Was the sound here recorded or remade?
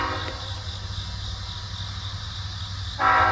recorded